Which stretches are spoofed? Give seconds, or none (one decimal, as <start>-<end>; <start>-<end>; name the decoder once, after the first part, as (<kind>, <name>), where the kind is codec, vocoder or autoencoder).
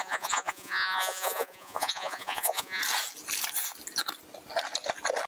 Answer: 0.0-2.8 (vocoder, Vocos)